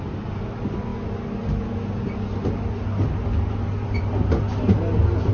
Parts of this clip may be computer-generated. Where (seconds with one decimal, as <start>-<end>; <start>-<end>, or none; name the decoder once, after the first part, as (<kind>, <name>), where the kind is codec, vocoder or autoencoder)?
none